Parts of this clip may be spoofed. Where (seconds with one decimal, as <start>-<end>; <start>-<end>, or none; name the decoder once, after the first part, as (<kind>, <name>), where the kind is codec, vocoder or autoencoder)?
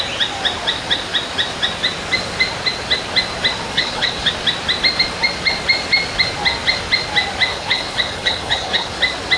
3.7-4.3 (codec, HILCodec); 7.5-9.0